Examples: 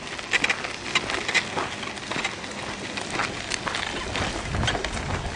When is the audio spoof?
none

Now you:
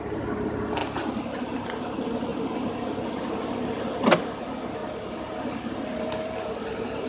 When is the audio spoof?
none

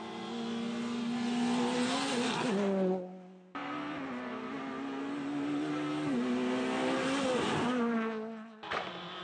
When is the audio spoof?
none

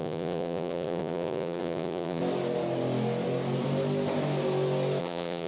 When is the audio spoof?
0.0-2.2 (vocoder, Vocos); 5.0-5.5

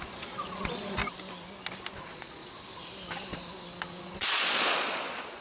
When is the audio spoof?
0.0-1.0 (vocoder, Vocos); 1.9-2.4; 4.0-5.4

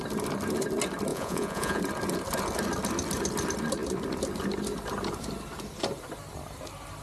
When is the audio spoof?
1.1-1.8 (vocoder, Vocos)